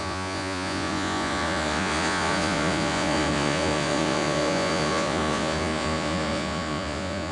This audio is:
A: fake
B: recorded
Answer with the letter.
A